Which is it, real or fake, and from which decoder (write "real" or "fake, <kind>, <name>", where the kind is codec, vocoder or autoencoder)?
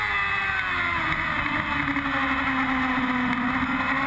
real